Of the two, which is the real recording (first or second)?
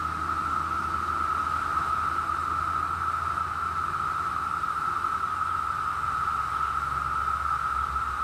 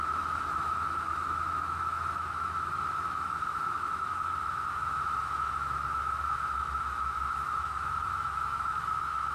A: first